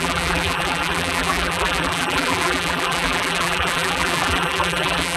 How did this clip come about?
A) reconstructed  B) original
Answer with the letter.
A